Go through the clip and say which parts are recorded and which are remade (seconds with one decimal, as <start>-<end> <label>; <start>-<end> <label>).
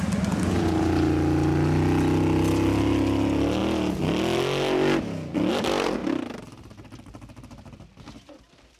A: 0.0-8.8 recorded